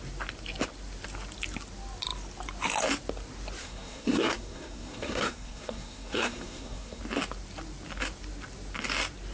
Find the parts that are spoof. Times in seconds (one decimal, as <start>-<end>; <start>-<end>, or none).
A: 3.6-7.0